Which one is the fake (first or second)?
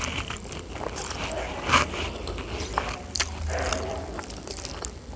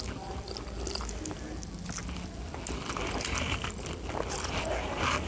first